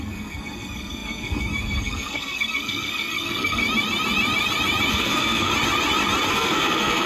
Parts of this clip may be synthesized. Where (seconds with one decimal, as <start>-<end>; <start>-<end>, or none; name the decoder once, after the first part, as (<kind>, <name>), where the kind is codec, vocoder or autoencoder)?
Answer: 0.0-3.6 (codec, SNAC); 4.9-5.5; 6.3-7.1